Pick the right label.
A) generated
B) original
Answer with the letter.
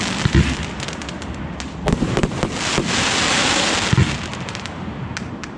B